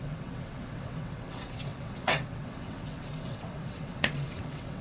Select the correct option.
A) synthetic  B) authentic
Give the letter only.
A